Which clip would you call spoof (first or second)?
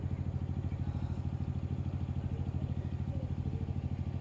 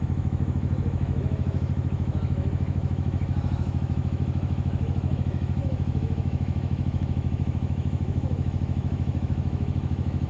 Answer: second